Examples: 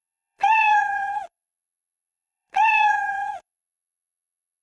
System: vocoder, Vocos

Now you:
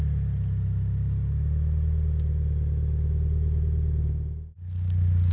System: none